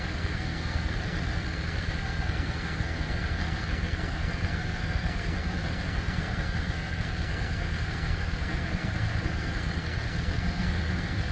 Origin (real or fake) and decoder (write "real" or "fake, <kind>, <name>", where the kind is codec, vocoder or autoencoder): fake, codec, SNAC